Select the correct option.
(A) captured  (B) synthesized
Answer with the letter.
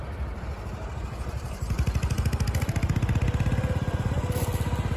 A